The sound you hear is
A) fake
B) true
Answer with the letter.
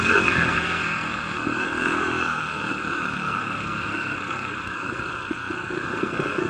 A